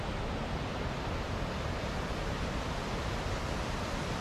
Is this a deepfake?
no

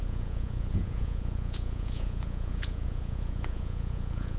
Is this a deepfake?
yes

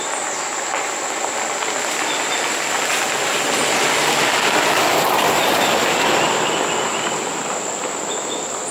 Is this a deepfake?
no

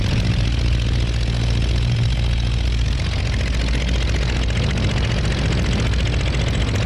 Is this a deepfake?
no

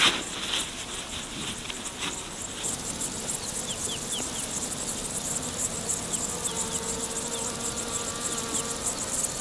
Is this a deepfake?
no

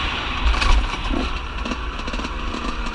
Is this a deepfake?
yes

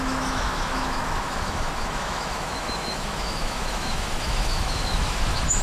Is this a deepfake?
yes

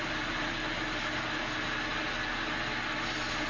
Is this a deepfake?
no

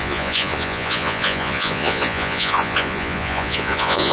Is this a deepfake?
yes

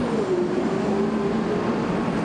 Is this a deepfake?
no